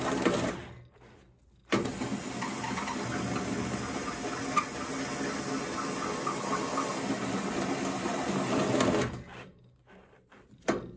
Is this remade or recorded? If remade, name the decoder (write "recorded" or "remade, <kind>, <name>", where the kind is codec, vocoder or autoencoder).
recorded